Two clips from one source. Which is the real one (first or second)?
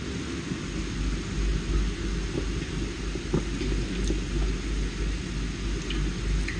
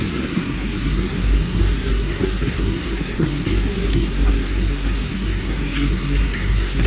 first